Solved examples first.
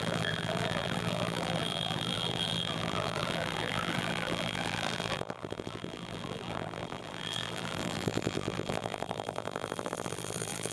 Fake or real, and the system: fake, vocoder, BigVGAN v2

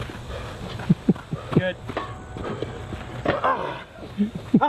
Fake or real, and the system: real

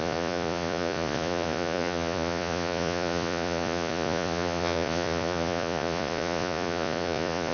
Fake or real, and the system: fake, vocoder, Vocos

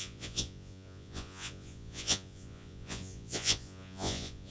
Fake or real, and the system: fake, vocoder, Vocos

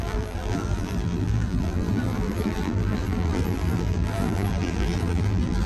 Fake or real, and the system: fake, vocoder, BigVGAN v2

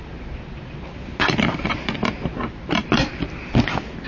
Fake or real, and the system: real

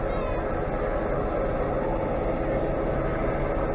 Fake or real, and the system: real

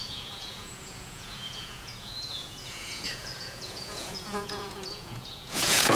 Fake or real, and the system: fake, vocoder, Vocos